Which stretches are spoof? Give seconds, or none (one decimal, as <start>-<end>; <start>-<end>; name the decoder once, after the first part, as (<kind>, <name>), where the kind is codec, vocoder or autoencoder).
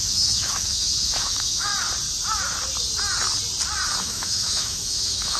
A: 0.0-1.7 (autoencoder, DAC-VAE); 4.0-5.4